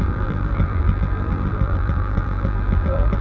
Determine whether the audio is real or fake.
fake